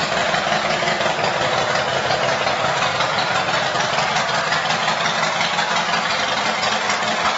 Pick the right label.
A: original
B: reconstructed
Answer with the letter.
A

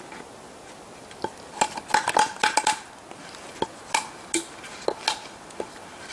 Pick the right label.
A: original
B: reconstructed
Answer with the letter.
A